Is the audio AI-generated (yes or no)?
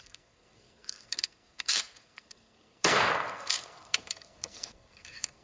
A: yes